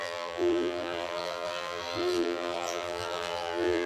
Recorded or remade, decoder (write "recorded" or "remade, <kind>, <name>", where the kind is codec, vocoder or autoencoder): remade, vocoder, BigVGAN v2